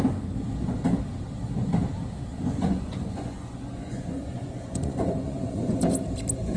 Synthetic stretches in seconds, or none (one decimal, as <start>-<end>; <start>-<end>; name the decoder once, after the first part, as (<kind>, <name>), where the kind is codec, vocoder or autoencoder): 2.3-5.8 (vocoder, Vocos)